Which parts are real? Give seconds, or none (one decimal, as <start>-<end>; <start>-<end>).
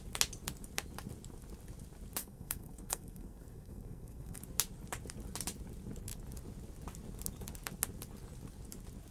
0.0-2.2; 4.4-9.1